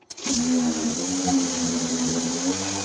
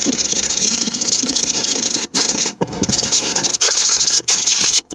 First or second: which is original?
first